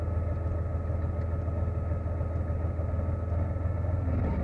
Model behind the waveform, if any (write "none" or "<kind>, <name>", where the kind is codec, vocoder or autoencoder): none